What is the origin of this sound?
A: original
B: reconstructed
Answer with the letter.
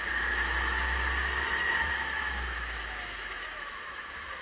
B